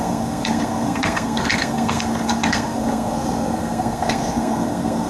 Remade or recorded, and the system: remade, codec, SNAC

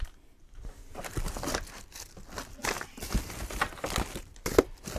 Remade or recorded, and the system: recorded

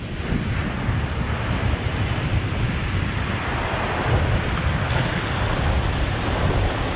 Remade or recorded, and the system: recorded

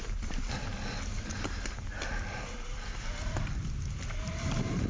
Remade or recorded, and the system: recorded